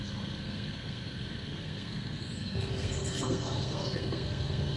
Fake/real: fake